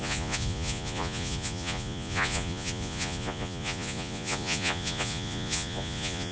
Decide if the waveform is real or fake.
fake